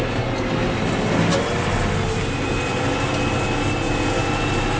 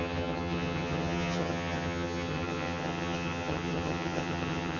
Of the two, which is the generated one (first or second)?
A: second